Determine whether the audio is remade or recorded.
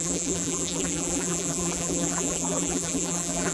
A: remade